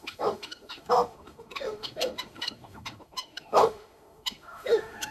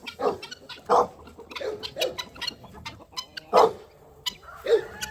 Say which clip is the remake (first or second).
first